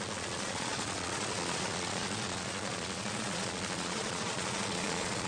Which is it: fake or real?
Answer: fake